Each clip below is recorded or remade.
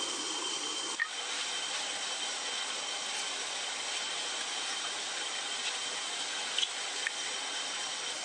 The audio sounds recorded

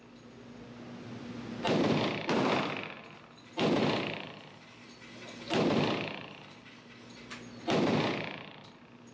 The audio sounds recorded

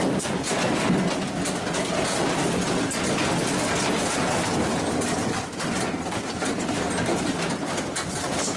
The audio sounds recorded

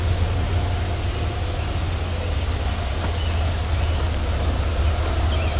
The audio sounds recorded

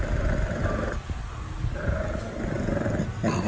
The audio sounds recorded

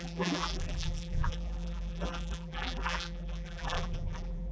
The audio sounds remade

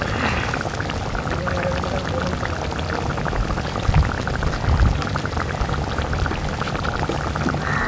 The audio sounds recorded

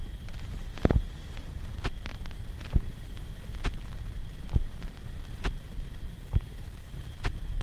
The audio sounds remade